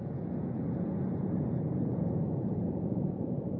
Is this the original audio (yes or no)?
no